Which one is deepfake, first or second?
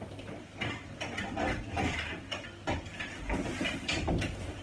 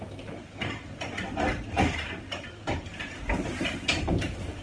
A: second